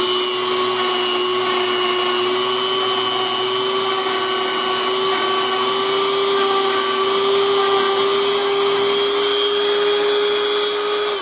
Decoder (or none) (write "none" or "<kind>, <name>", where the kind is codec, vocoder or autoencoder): none